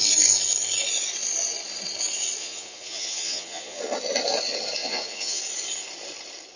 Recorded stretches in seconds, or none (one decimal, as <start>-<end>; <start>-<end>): 0.0-2.4; 3.8-4.8; 5.4-6.6